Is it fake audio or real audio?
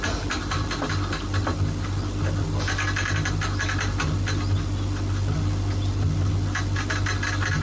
real